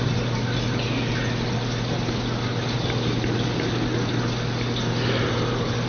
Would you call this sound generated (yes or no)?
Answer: no